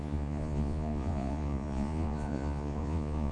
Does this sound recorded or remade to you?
remade